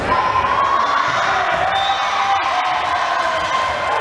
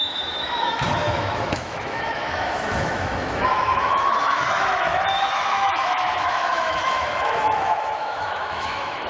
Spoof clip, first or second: second